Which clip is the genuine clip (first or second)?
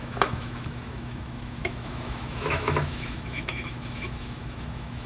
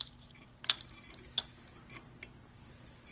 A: second